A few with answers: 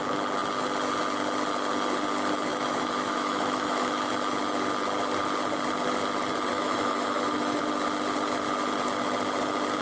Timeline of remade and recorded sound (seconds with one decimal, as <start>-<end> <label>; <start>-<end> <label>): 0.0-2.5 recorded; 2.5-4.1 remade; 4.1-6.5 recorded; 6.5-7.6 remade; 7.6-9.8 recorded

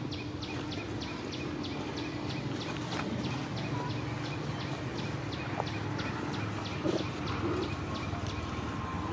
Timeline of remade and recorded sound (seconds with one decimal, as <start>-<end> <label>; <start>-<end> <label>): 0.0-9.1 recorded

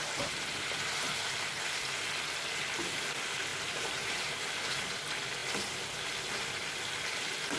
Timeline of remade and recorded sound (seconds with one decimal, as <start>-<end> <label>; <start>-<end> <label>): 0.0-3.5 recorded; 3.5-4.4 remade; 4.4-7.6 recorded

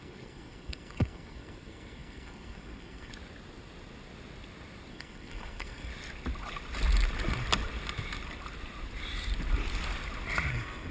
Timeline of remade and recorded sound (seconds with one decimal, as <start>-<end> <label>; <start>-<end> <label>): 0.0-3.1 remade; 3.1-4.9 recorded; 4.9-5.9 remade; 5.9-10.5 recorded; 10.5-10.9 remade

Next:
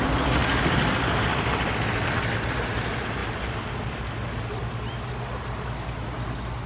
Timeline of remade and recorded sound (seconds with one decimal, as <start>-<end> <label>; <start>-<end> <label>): 0.0-6.7 recorded

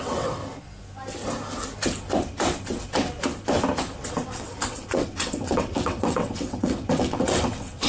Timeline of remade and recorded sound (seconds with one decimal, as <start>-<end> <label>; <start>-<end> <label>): 0.0-0.4 remade; 0.4-4.1 recorded; 4.1-7.9 remade

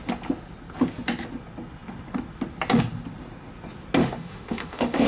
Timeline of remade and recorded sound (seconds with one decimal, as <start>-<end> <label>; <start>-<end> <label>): 0.0-4.0 recorded; 4.0-5.1 remade

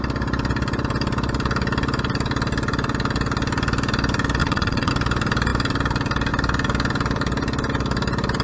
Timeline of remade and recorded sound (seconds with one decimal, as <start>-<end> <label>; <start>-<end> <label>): 0.0-4.4 recorded; 4.4-4.9 remade; 4.9-8.4 recorded